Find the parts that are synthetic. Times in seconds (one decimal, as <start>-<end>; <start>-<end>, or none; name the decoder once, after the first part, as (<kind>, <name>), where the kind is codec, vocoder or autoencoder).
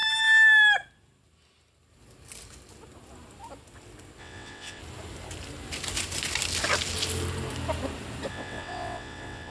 4.2-4.8 (vocoder, WaveNeXt); 8.3-9.5